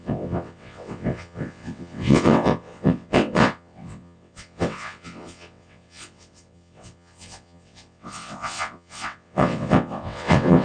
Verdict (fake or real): fake